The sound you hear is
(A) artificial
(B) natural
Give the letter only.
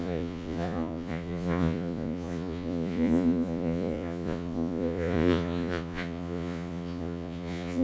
A